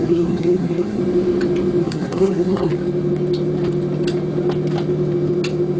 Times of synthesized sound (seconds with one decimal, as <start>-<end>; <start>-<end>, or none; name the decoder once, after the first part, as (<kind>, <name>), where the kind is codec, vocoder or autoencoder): 0.0-1.0 (codec, SNAC); 1.8-2.7